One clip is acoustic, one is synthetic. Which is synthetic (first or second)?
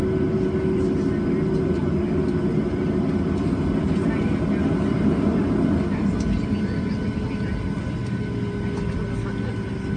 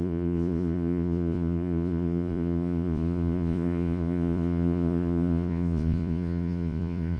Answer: second